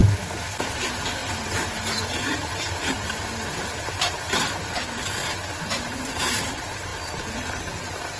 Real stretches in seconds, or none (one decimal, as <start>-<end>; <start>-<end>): 0.0-0.6; 6.9-8.2

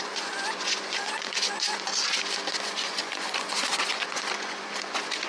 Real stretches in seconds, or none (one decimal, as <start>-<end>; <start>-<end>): 1.9-2.5